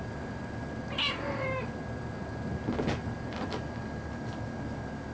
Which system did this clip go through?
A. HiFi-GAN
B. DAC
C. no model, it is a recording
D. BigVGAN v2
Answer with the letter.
C